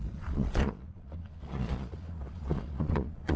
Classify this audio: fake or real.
fake